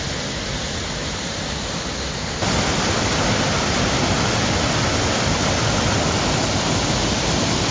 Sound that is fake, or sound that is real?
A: real